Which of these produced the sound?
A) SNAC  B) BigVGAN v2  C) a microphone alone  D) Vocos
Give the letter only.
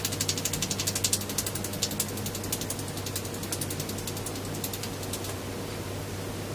C